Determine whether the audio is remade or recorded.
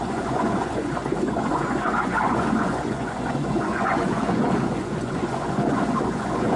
remade